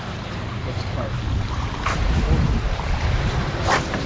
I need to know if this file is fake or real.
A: fake